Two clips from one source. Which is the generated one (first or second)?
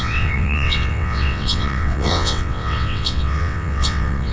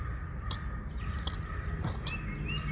first